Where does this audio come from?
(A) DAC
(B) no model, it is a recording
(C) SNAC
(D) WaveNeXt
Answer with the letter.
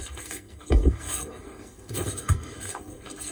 C